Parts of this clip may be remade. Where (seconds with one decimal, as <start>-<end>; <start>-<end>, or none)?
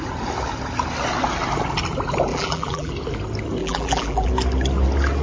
2.3-2.9; 3.6-4.3